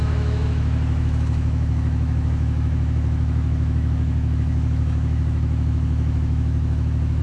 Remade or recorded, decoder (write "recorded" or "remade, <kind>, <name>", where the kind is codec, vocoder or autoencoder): remade, autoencoder, DAC-VAE